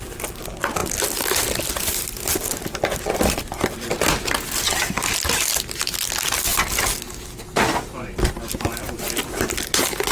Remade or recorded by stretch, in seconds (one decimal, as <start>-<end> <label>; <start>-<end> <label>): 0.0-10.1 recorded